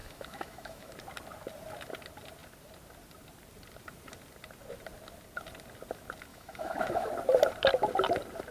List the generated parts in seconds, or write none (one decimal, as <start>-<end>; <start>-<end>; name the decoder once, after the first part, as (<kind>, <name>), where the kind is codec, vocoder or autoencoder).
0.0-0.9 (autoencoder, DAC-VAE); 6.3-7.1